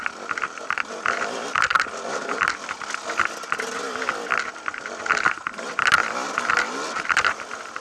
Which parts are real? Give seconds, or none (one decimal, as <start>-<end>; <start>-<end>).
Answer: 0.0-7.8